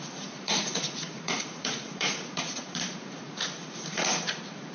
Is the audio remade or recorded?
remade